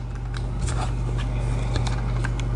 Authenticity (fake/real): real